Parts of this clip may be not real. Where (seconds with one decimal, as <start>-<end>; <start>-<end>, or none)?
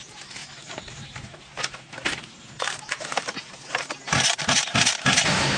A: none